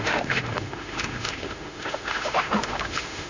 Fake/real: fake